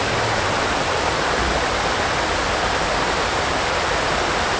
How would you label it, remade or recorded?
recorded